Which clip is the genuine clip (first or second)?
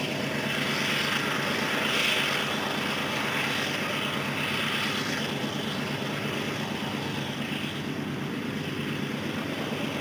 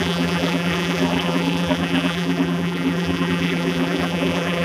first